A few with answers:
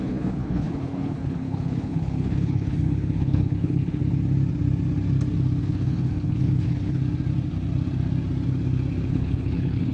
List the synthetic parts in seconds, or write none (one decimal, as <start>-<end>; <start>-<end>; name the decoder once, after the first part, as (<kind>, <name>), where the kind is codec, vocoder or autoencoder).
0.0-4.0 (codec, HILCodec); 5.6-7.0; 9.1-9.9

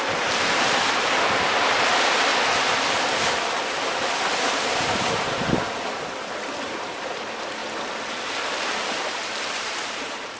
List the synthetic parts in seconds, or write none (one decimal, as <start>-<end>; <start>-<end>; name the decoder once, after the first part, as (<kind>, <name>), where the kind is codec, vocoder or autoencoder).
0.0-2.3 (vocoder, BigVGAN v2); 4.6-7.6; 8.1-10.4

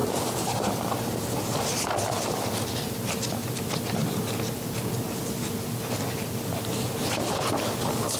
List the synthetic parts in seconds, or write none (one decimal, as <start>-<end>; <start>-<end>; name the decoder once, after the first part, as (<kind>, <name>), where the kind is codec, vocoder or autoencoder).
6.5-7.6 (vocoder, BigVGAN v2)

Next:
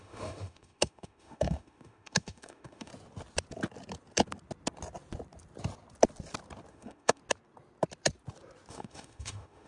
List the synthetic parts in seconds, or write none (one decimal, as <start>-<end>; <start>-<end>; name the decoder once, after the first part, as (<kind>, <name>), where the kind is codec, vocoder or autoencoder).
0.0-2.9 (autoencoder, DAC-VAE); 6.7-7.2; 8.7-9.7

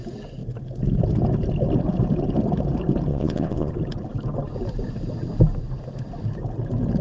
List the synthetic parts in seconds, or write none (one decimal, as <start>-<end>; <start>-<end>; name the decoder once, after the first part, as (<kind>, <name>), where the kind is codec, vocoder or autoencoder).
3.1-3.7 (vocoder, Vocos)

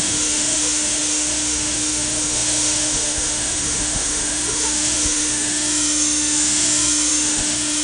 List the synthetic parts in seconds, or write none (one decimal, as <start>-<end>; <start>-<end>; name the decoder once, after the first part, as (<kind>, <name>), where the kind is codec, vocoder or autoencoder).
0.0-7.8 (autoencoder, DAC-VAE)